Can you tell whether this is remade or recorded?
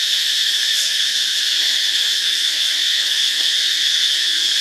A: remade